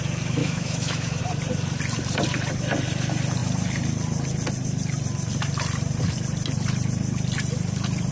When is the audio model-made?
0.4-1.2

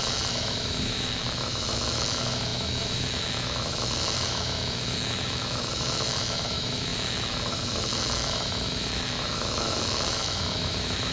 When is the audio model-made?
0.0-11.1

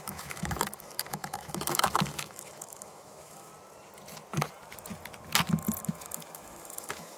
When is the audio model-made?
0.0-3.5; 5.9-7.2

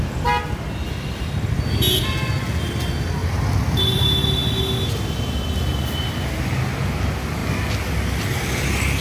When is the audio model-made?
none

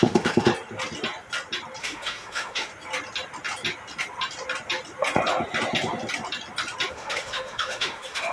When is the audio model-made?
0.0-0.5; 1.8-2.7; 6.9-8.3

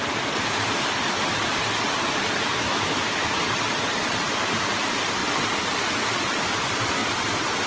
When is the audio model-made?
2.5-3.3

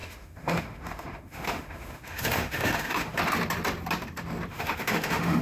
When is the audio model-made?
0.0-3.2; 4.5-5.4

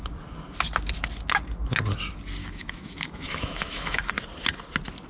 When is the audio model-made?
2.4-4.1